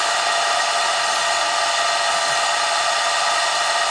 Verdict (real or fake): real